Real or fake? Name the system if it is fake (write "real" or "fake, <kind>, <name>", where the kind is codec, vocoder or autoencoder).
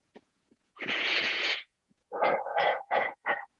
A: fake, vocoder, Vocos